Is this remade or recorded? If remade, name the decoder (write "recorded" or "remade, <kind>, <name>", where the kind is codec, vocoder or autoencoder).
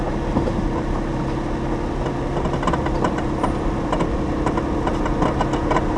recorded